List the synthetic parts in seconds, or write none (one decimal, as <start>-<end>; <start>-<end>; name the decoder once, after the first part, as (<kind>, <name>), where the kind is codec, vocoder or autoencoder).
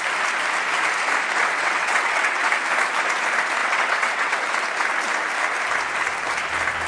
1.4-2.5 (vocoder, WaveNeXt); 3.6-4.4